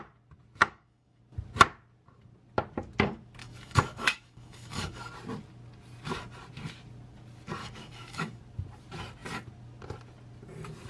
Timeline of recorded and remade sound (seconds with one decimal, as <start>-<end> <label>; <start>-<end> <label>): 0.0-0.6 recorded; 0.6-1.2 remade; 1.2-3.4 recorded; 3.4-5.1 remade; 5.1-7.6 recorded; 7.6-8.4 remade; 8.4-10.9 recorded